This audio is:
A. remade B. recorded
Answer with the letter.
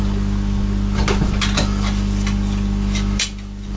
B